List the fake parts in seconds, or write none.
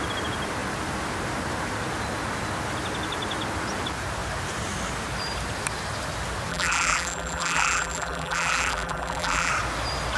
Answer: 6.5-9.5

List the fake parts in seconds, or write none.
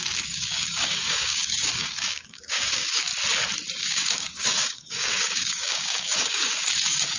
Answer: 0.0-3.1; 3.8-7.2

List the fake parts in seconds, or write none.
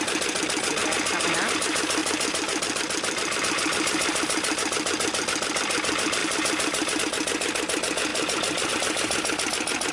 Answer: 0.8-1.5; 2.0-3.4; 6.2-7.0; 8.1-8.7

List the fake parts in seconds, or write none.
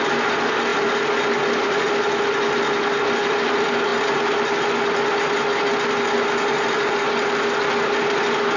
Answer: none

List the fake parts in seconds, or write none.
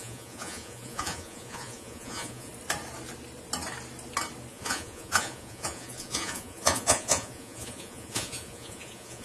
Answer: 0.0-2.5; 4.5-9.2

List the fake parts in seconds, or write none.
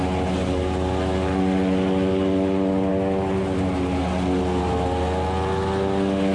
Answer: none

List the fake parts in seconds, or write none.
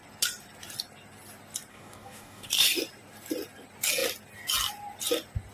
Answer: 1.7-2.5